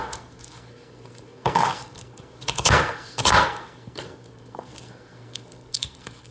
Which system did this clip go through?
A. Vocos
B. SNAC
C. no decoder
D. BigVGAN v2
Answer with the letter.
B